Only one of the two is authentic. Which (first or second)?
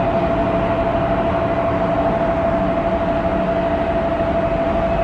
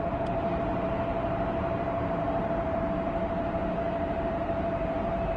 first